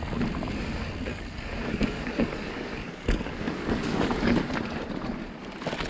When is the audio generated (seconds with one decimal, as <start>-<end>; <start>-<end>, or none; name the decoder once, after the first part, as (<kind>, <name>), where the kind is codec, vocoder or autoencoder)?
1.1-4.5 (codec, DAC)